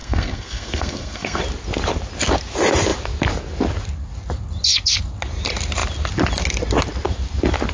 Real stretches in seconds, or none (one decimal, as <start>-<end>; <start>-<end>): 1.4-7.7